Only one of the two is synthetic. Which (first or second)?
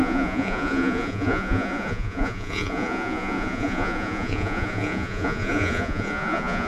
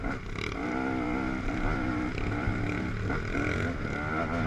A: first